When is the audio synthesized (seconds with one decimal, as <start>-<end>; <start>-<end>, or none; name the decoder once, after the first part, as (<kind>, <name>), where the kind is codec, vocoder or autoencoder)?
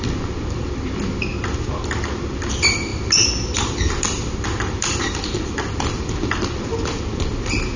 none